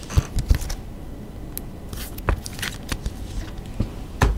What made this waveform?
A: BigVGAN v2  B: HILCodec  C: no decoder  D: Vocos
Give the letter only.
C